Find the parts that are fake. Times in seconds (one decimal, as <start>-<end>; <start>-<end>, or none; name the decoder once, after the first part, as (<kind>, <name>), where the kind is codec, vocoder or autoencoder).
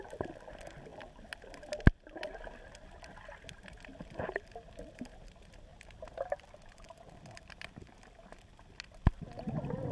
0.9-1.4 (vocoder, BigVGAN v2); 5.7-7.7